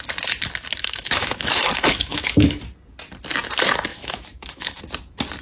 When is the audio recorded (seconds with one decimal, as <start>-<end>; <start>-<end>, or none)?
0.0-0.8; 2.6-3.9; 4.8-5.4